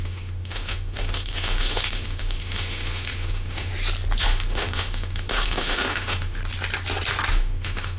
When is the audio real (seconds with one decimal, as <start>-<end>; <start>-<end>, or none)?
3.7-4.2; 6.4-7.3